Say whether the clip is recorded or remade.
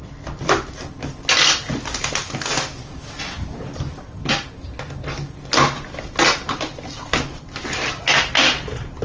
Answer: recorded